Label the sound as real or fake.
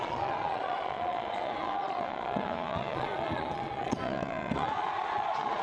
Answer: fake